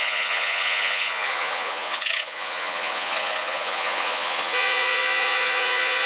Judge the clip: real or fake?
fake